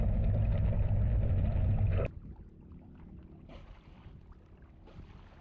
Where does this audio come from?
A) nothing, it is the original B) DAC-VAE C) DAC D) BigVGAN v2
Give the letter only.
A